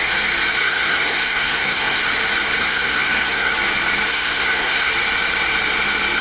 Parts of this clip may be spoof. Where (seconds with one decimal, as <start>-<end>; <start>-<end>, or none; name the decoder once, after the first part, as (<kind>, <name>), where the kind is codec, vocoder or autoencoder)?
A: 0.6-2.0 (codec, SNAC); 2.6-3.5; 4.1-4.9